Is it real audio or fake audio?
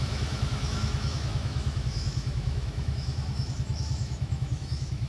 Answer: fake